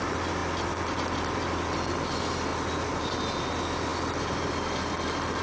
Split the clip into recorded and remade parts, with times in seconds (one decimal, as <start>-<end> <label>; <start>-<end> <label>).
0.0-5.4 recorded